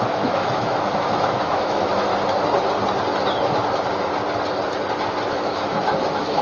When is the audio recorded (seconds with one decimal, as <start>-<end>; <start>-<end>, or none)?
2.1-5.3